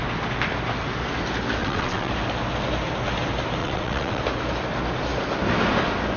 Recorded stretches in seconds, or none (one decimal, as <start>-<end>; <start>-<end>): 0.0-1.6; 2.1-3.6; 4.2-6.2